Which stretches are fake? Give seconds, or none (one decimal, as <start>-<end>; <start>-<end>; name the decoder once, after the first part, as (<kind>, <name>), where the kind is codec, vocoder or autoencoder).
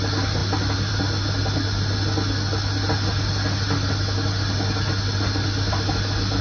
none